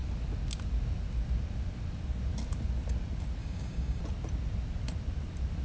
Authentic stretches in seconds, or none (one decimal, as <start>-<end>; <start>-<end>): 0.0-3.4; 4.0-5.6